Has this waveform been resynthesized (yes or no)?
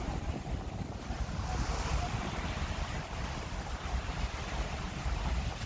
yes